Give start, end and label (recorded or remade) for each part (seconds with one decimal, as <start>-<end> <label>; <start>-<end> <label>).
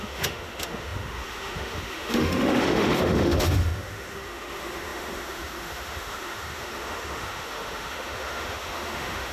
0.0-9.3 remade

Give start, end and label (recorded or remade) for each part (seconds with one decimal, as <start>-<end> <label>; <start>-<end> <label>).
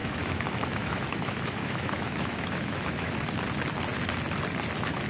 0.0-3.1 remade; 3.1-5.1 recorded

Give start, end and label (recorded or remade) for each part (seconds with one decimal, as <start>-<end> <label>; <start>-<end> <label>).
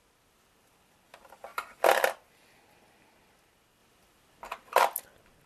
0.0-5.5 recorded